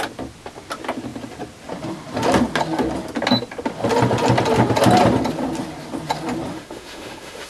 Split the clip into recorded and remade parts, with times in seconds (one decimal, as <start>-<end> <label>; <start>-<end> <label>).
0.0-6.5 recorded; 6.5-7.5 remade